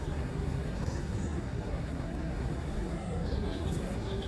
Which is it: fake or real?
fake